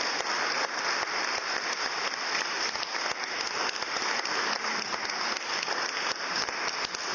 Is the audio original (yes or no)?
yes